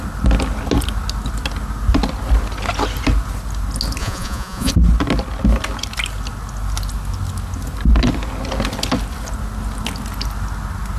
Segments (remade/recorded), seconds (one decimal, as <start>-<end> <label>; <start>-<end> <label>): 0.0-4.0 recorded; 4.0-4.7 remade; 4.7-11.0 recorded